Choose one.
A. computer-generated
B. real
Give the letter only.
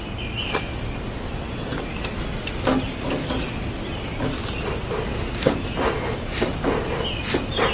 B